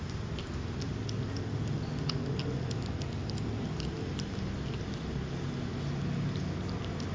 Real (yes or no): yes